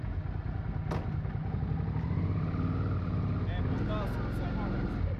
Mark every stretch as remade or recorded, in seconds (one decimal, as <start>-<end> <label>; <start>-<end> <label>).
0.0-5.2 recorded